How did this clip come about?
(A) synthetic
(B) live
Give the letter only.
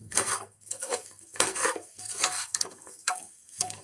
A